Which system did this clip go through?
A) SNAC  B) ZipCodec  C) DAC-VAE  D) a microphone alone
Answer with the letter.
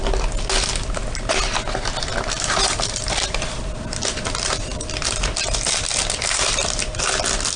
D